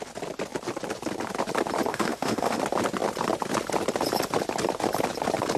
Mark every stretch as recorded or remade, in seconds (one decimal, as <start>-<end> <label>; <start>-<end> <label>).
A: 0.0-1.9 recorded; 1.9-2.6 remade; 2.6-5.6 recorded